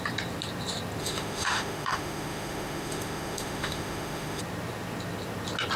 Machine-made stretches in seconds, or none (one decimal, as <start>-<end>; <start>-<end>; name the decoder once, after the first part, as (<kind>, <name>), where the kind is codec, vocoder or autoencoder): 1.0-4.4 (autoencoder, DAC-VAE)